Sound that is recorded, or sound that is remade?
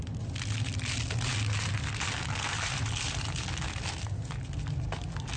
recorded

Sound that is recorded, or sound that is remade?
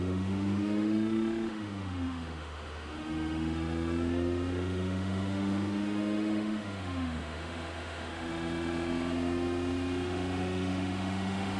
remade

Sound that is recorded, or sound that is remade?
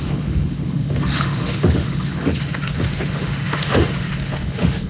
remade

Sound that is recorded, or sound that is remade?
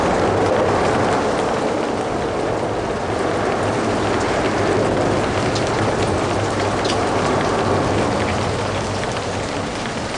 recorded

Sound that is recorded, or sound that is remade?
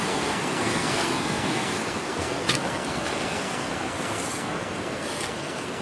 remade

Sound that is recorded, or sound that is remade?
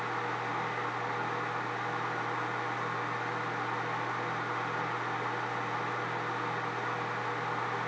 recorded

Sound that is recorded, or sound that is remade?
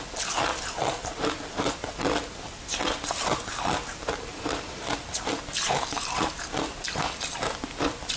recorded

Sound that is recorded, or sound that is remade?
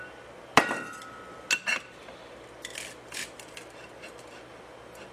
recorded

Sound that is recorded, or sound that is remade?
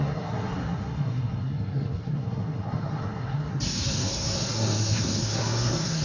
remade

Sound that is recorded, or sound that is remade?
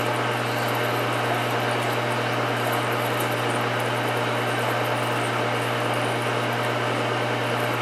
recorded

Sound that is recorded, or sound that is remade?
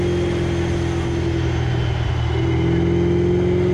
recorded